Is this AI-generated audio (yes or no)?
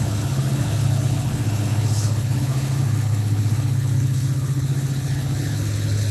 yes